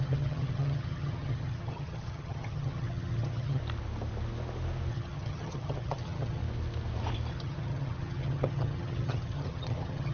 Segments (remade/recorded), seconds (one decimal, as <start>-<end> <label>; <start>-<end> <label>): 0.0-3.6 remade; 3.6-4.9 recorded; 4.9-6.4 remade; 6.4-7.3 recorded; 7.3-10.1 remade